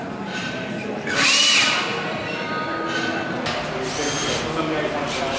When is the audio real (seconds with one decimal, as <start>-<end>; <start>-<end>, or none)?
1.4-5.4